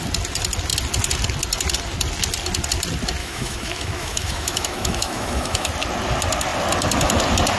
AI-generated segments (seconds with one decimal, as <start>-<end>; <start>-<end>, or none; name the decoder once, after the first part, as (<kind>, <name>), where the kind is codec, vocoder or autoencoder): 3.2-5.7 (autoencoder, DAC-VAE)